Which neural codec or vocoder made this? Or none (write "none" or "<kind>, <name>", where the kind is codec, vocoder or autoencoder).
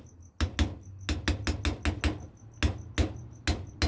none